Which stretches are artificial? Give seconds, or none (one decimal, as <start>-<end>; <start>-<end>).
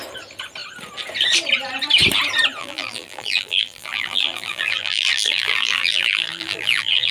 2.6-7.1